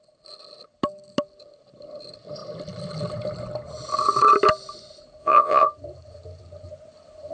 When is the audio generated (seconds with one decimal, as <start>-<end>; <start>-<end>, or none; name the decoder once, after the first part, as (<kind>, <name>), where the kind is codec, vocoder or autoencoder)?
5.2-5.7 (vocoder, Vocos)